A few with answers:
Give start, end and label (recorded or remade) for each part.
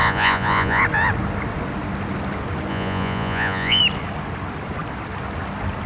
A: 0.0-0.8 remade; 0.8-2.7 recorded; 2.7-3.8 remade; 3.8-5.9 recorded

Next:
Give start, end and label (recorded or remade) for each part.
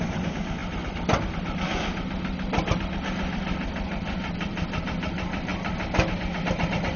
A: 0.0-7.0 recorded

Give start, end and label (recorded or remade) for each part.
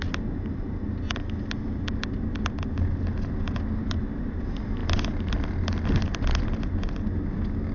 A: 0.0-7.7 recorded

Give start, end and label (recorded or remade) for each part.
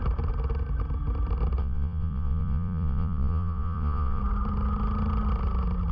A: 0.0-1.6 recorded; 1.6-4.2 remade; 4.2-5.9 recorded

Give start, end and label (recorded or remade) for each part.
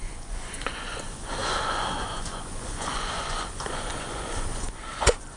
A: 0.0-5.4 remade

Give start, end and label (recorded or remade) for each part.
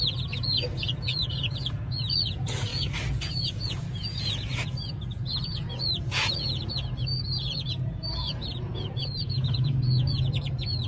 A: 0.0-10.9 remade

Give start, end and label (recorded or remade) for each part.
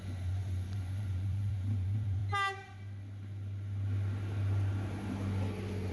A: 0.0-2.2 remade; 2.2-5.9 recorded